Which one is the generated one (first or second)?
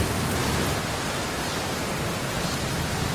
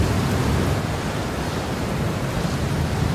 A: second